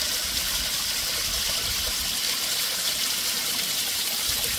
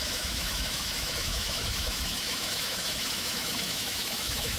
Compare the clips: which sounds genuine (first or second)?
first